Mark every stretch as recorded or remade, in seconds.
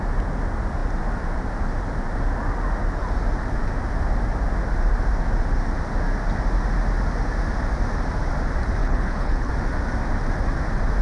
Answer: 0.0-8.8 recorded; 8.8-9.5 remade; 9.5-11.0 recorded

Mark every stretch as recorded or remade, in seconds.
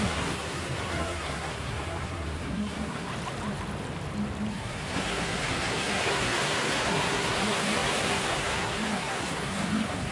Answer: 0.0-3.1 remade; 3.1-4.5 recorded; 4.5-10.1 remade